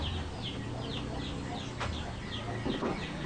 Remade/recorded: recorded